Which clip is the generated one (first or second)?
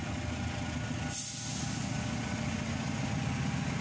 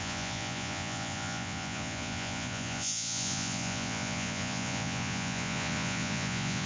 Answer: second